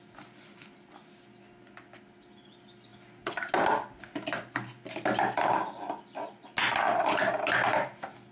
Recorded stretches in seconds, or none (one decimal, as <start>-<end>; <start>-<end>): 0.0-8.3